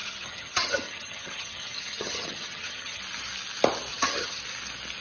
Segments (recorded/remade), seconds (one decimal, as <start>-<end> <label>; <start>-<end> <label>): 0.0-3.0 remade; 3.0-3.9 recorded; 3.9-4.4 remade; 4.4-5.0 recorded

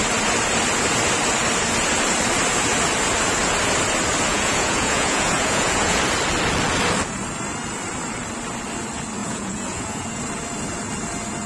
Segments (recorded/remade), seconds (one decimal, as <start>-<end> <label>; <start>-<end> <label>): 0.0-4.3 recorded; 4.3-6.0 remade; 6.0-9.2 recorded; 9.2-10.2 remade; 10.2-11.5 recorded

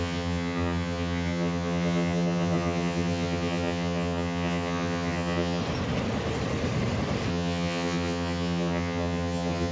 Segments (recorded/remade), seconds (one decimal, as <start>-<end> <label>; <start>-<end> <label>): 0.0-5.6 remade; 5.6-7.3 recorded; 7.3-9.7 remade

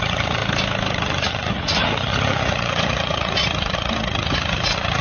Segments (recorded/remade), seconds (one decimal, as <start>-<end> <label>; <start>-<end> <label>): 0.0-0.4 remade; 0.4-0.9 recorded; 0.9-5.0 remade

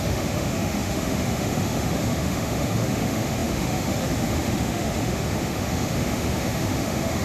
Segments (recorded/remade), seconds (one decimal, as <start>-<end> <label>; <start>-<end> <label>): 0.0-7.2 remade

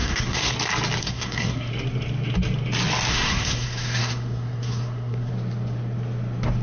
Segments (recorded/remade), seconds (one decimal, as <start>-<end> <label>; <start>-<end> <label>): 0.0-0.5 remade; 0.5-1.0 recorded; 1.0-1.7 remade; 1.7-3.1 recorded; 3.1-5.3 remade; 5.3-6.6 recorded

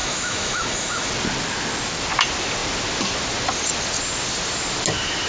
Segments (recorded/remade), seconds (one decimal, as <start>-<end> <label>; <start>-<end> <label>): 0.0-1.1 remade; 1.1-5.3 recorded